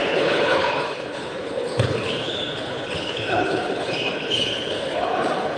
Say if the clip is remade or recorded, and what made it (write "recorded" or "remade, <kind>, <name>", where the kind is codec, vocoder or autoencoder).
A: remade, codec, HILCodec